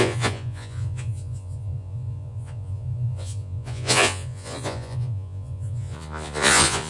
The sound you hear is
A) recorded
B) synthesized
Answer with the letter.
B